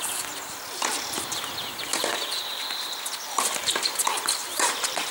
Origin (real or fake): real